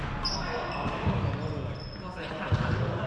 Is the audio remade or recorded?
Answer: recorded